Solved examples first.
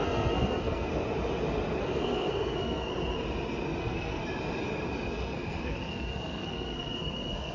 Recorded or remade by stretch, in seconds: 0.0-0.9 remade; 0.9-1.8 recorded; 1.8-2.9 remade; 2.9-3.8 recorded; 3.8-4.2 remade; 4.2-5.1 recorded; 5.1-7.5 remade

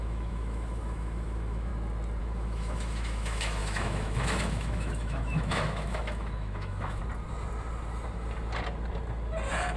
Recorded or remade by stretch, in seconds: 0.0-1.7 remade; 1.7-2.2 recorded; 2.2-7.0 remade; 7.0-9.8 recorded

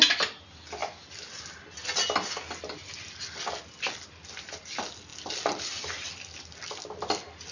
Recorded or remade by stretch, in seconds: 0.0-7.5 recorded

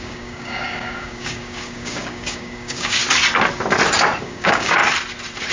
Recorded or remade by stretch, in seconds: 0.0-3.0 remade; 3.0-4.2 recorded; 4.2-4.8 remade; 4.8-5.5 recorded

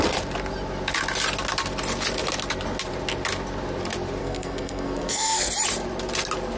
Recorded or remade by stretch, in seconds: 0.0-4.2 recorded; 4.2-5.5 remade; 5.5-6.6 recorded